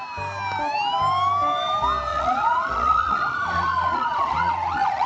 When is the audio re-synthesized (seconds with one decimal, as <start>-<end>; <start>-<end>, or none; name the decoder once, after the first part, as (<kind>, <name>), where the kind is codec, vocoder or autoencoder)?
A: 2.1-5.1 (vocoder, Vocos)